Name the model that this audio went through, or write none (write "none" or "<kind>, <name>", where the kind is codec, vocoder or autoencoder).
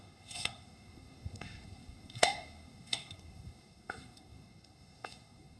codec, SNAC